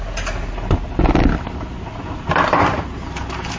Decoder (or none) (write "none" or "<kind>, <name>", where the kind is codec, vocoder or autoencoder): none